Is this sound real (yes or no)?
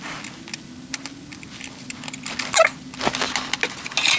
yes